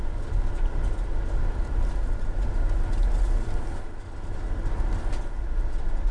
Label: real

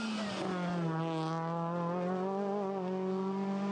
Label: real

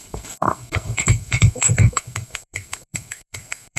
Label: fake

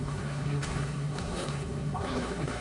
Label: fake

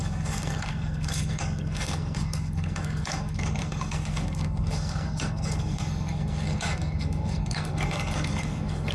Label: fake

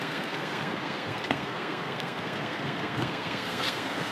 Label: fake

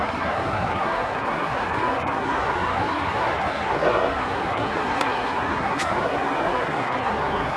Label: fake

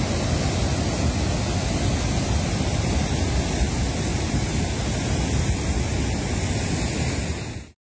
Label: real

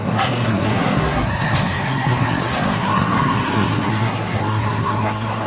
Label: fake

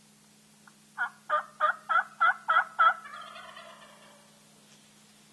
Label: real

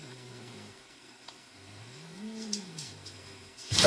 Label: fake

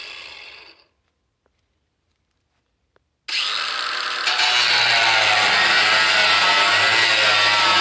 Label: real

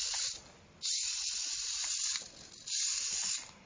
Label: real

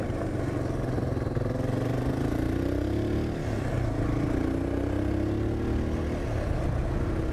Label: real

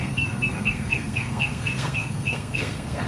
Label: fake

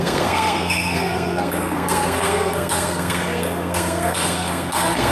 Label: fake